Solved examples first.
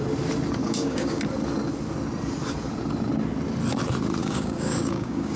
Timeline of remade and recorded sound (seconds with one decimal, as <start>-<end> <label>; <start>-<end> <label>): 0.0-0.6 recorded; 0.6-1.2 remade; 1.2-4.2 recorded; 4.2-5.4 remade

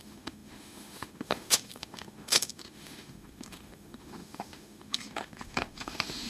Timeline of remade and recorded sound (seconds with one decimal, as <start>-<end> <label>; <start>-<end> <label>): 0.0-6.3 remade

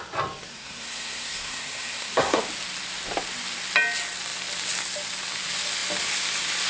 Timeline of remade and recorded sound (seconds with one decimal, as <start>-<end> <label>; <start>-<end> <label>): 0.0-0.5 recorded; 0.5-2.4 remade; 2.4-6.7 recorded

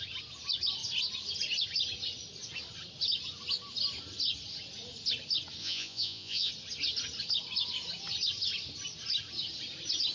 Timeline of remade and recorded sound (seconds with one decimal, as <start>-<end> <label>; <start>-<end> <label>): 0.0-5.6 recorded; 5.6-6.5 remade; 6.5-10.1 recorded